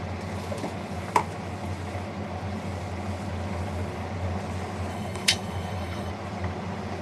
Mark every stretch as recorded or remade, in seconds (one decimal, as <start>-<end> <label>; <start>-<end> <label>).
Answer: 0.0-4.9 recorded; 4.9-6.1 remade; 6.1-7.0 recorded